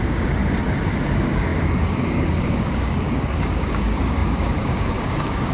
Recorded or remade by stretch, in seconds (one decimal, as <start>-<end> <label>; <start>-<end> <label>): 0.0-0.4 remade; 0.4-1.1 recorded; 1.1-5.5 remade

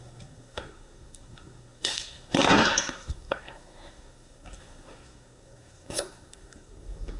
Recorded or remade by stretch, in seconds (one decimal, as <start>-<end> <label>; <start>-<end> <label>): 0.0-7.2 remade

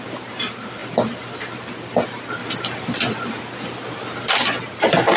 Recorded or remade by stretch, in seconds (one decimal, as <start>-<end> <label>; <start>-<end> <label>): 0.0-5.2 recorded

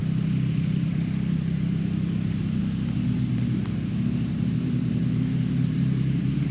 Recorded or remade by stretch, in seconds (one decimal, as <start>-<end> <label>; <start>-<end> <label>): 0.0-0.5 recorded; 0.5-2.6 remade; 2.6-3.3 recorded; 3.3-6.5 remade

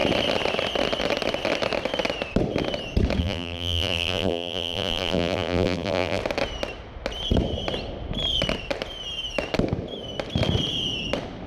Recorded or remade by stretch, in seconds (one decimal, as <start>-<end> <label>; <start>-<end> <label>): 0.0-3.2 recorded; 3.2-6.2 remade; 6.2-11.5 recorded

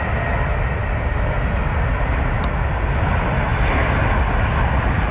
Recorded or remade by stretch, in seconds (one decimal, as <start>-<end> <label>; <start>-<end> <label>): 0.0-5.1 recorded

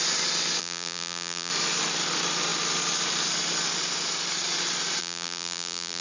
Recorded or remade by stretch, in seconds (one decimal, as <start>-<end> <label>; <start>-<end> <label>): 0.0-0.6 recorded; 0.6-1.5 remade; 1.5-5.0 recorded; 5.0-6.0 remade